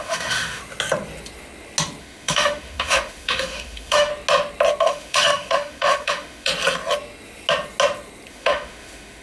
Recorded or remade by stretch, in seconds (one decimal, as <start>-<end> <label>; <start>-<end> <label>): 0.0-0.6 remade; 0.6-2.0 recorded; 2.0-4.1 remade; 4.1-4.8 recorded; 4.8-6.5 remade; 6.5-8.3 recorded; 8.3-9.2 remade